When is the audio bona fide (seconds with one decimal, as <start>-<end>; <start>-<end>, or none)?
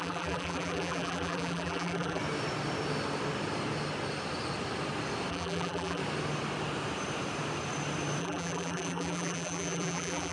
2.2-5.3; 6.0-8.2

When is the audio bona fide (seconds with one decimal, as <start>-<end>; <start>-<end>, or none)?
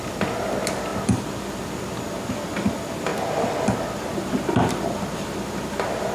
3.1-4.1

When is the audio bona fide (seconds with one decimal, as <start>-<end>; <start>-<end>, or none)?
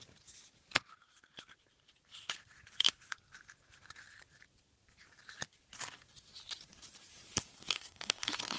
0.0-7.5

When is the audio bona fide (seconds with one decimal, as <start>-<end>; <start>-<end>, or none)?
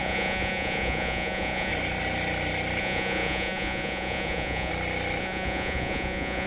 1.7-2.8; 4.7-5.2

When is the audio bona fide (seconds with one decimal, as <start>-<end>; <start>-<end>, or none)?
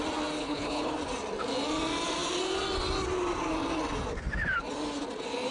0.0-0.4; 0.9-5.5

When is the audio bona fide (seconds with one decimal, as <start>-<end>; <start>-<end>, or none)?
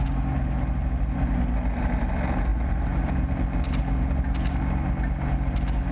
0.0-5.9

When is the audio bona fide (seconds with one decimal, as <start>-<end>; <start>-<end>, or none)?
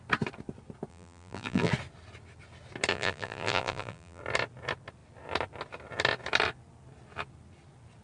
0.0-0.9; 1.7-2.9; 4.2-8.0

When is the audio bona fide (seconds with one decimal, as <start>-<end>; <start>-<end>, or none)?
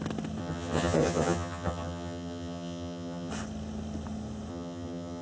0.0-0.4; 3.3-4.5